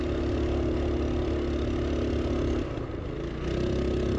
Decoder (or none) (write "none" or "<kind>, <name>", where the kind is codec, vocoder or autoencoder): none